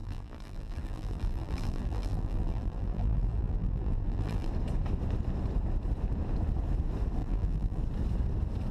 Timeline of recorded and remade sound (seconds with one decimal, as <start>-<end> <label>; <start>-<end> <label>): 0.0-4.5 remade; 4.5-7.2 recorded; 7.2-7.8 remade; 7.8-8.7 recorded